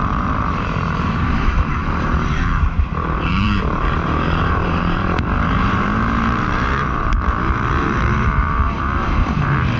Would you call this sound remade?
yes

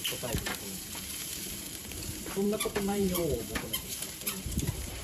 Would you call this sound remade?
yes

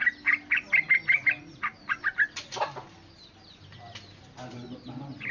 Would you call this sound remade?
no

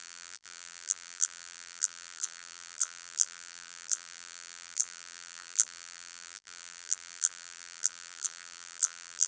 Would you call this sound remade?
yes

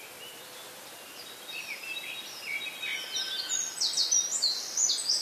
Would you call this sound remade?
no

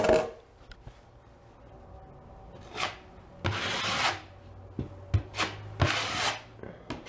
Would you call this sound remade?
no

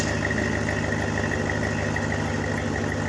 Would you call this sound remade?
no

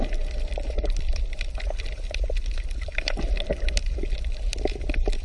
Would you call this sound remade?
yes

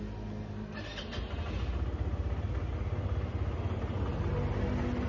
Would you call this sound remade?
no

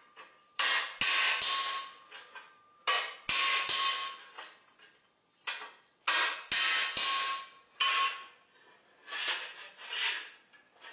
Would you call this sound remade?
no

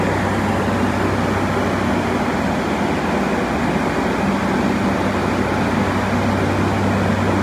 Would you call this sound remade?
no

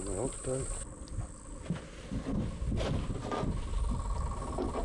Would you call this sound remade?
no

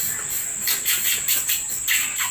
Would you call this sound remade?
yes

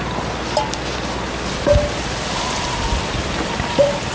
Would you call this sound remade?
no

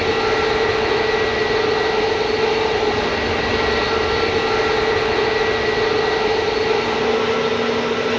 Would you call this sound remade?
no